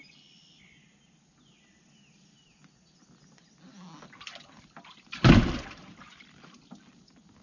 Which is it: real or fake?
real